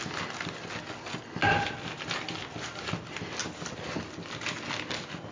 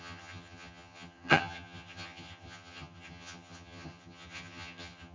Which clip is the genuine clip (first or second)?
first